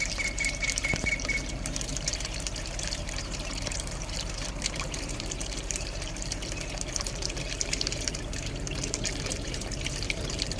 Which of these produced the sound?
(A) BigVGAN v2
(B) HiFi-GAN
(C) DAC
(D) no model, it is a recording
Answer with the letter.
A